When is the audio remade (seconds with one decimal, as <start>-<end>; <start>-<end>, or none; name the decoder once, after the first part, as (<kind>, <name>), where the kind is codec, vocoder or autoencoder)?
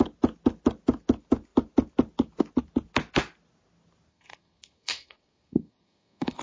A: 4.1-6.4 (codec, SNAC)